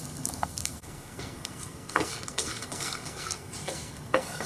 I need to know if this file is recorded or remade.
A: remade